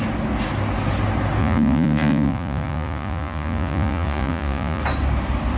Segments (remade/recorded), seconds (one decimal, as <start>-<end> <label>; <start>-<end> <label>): 0.0-1.4 recorded; 1.4-4.8 remade; 4.8-5.6 recorded